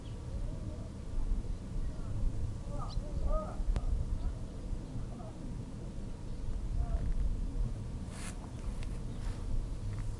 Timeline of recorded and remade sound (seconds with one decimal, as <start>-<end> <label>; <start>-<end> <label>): 0.0-1.0 recorded; 1.0-2.8 remade; 2.8-10.2 recorded